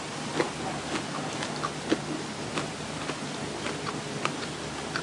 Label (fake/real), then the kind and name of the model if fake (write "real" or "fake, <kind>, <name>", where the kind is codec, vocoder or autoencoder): real